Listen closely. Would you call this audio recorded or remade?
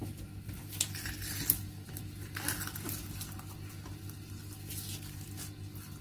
recorded